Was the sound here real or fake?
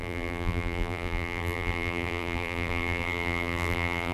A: fake